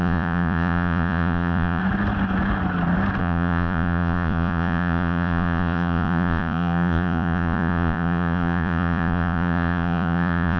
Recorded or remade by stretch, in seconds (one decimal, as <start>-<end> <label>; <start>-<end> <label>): 0.0-1.8 remade; 1.8-3.2 recorded; 3.2-10.6 remade